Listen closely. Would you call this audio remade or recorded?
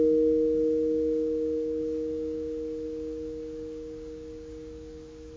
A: remade